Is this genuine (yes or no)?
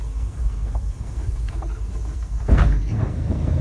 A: no